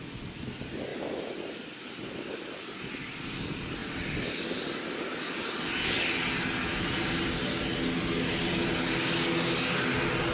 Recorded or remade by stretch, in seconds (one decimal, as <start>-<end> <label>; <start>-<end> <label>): 0.0-0.9 recorded; 0.9-3.4 remade; 3.4-10.3 recorded